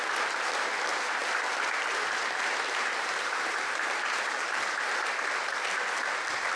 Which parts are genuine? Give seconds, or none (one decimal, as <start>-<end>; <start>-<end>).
0.0-2.8; 5.1-6.6